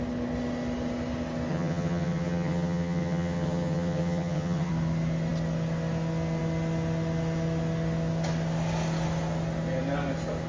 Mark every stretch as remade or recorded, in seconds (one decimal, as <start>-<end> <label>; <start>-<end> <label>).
0.0-1.5 recorded; 1.5-4.7 remade; 4.7-10.5 recorded